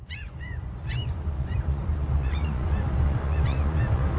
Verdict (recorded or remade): remade